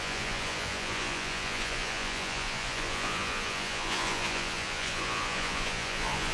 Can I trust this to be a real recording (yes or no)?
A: no